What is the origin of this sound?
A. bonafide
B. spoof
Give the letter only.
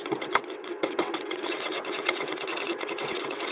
B